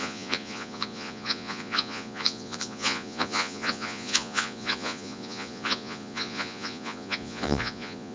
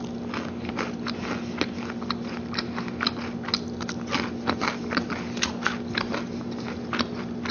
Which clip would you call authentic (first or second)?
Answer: second